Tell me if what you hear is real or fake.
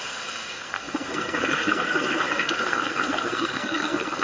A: fake